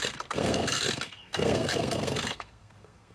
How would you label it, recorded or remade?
remade